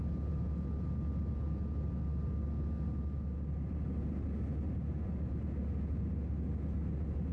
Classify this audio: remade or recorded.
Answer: recorded